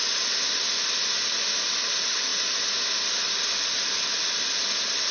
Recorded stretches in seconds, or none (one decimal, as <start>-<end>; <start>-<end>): 0.0-5.1